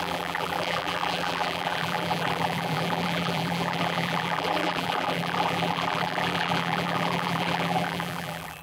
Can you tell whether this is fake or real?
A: fake